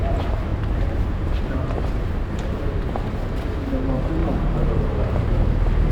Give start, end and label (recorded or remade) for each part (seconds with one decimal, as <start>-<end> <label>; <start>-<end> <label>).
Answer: 0.0-0.5 recorded; 0.5-1.7 remade; 1.7-4.2 recorded; 4.2-5.3 remade; 5.3-5.9 recorded